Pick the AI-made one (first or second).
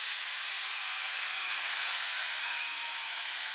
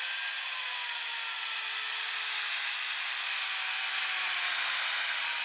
first